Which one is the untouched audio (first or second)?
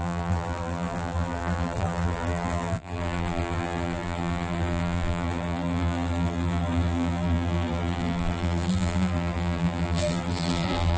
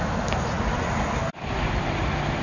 second